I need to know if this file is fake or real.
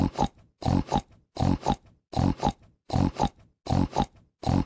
real